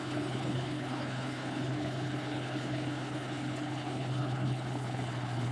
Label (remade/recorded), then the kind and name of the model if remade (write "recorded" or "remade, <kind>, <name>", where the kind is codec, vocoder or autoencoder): remade, codec, HILCodec